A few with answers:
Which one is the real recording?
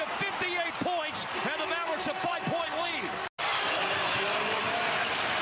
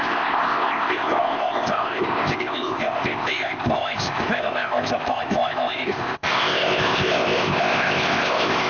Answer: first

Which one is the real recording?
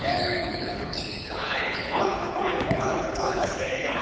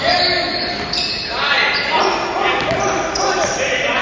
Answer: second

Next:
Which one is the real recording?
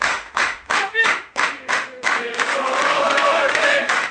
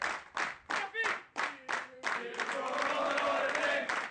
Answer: second